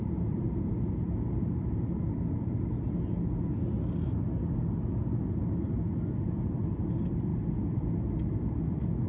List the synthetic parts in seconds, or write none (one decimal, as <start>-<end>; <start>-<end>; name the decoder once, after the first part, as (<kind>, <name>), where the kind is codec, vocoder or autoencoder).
none